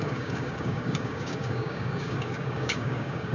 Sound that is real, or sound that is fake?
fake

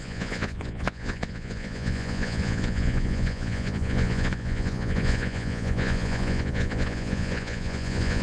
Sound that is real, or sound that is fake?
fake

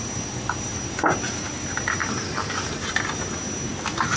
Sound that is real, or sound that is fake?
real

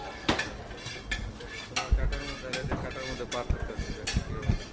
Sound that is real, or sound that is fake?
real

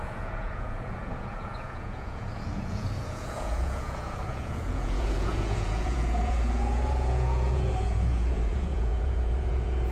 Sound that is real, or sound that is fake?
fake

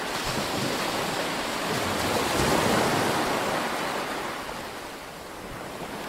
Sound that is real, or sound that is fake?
real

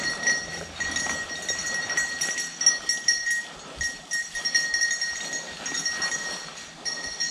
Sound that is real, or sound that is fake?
real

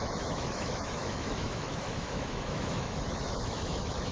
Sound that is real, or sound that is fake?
fake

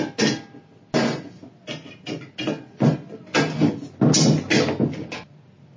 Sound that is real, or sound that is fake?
real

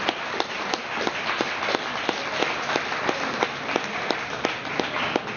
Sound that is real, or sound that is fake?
real